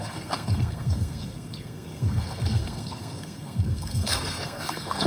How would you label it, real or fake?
fake